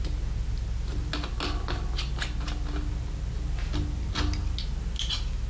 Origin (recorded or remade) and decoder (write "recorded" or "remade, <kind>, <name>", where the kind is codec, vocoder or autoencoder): recorded